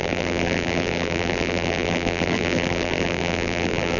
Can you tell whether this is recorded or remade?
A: remade